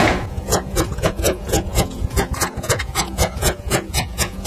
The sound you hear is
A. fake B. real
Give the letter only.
A